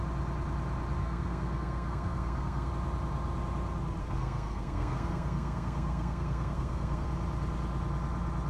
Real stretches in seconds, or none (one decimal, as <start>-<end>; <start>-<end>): 0.0-1.0; 2.7-4.0; 7.1-8.5